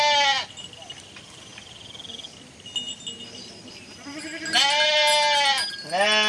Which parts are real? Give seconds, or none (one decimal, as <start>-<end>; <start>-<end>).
0.0-6.3